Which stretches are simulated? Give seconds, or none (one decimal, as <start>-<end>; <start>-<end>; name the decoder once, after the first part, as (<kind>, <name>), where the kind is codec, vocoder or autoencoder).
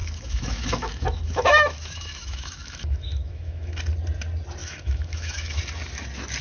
0.0-3.8 (autoencoder, DAC-VAE); 4.6-5.6